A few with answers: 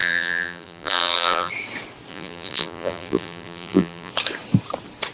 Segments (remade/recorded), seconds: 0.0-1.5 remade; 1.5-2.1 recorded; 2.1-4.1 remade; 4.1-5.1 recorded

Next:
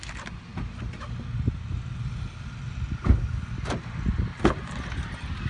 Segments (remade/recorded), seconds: 0.0-5.5 recorded